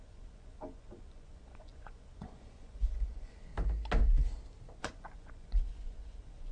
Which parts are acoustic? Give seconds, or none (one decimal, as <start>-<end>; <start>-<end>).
3.5-4.8